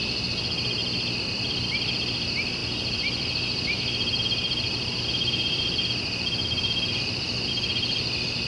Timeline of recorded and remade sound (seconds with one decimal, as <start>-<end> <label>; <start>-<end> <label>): 0.0-8.5 recorded